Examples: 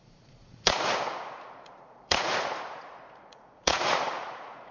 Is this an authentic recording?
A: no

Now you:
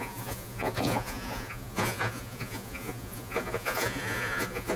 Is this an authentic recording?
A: no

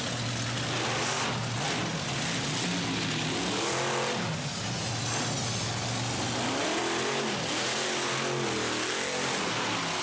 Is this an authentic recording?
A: yes